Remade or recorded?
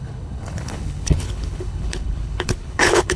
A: remade